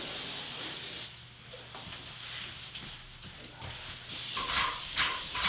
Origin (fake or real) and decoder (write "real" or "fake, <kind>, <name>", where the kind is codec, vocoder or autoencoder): real